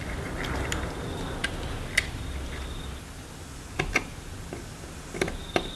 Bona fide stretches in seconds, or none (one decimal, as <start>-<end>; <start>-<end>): 0.0-5.8